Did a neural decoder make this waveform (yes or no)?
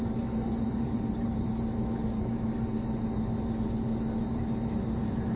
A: yes